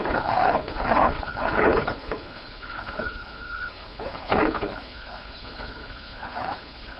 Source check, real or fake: fake